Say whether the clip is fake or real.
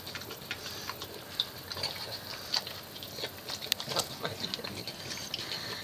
real